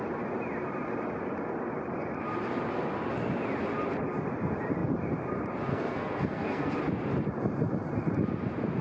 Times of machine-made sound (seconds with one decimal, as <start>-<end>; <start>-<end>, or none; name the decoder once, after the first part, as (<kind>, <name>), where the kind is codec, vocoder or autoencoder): 5.7-6.8 (codec, SNAC)